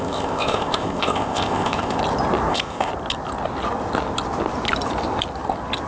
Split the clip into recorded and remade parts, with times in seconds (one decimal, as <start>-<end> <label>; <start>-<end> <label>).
0.0-2.0 remade; 2.0-2.5 recorded; 2.5-2.9 remade; 2.9-5.9 recorded